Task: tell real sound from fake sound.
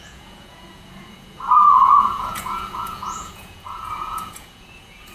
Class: fake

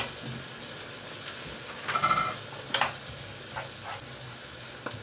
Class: real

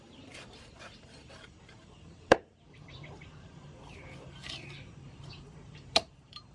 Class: fake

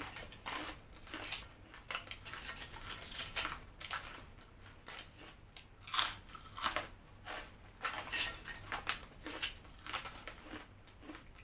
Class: real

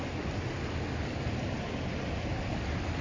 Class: real